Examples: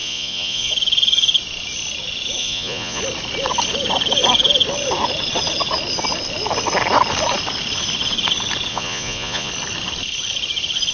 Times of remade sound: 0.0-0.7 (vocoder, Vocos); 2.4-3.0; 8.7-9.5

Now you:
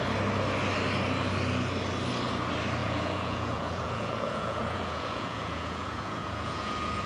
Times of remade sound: 2.8-7.1 (vocoder, Vocos)